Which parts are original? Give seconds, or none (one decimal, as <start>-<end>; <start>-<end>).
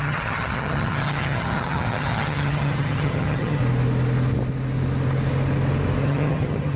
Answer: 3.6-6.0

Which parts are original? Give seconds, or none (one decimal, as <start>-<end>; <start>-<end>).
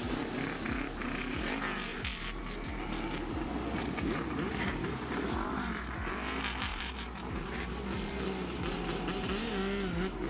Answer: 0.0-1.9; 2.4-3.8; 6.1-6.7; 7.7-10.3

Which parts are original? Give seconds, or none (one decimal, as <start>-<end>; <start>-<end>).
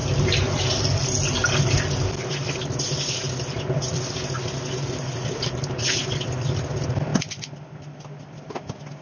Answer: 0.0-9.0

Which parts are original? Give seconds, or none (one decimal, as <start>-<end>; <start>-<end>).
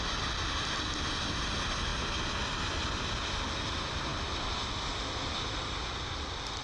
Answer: 0.0-6.6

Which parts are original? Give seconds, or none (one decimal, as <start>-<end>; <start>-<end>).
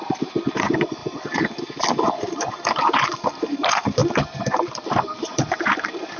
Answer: 1.0-1.6; 4.0-4.6